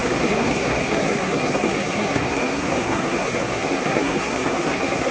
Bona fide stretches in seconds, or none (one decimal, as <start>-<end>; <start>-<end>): none